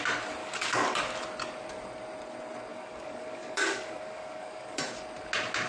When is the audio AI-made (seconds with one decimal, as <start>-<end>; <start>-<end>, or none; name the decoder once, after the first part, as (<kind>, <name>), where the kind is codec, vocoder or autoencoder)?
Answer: 0.4-1.0 (codec, DAC); 2.7-4.8